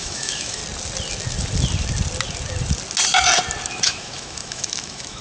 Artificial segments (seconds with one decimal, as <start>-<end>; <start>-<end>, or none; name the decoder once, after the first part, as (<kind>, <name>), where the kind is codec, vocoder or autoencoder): 0.0-0.6 (autoencoder, DAC-VAE); 3.7-5.2

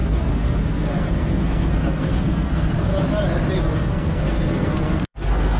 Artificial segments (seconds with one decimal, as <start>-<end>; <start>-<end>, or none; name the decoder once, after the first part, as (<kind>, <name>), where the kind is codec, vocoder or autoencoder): 0.0-2.9 (codec, SNAC); 3.6-5.6